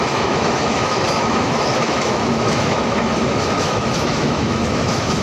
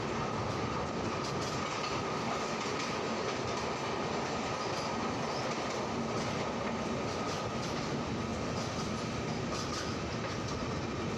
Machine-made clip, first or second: first